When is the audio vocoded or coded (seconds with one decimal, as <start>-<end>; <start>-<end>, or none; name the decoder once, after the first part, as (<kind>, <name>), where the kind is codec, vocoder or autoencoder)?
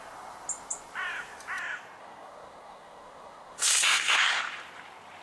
2.0-4.4 (codec, SNAC)